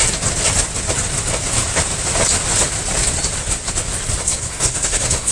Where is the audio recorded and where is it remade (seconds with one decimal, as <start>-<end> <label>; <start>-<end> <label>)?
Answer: 0.0-4.3 recorded; 4.3-5.3 remade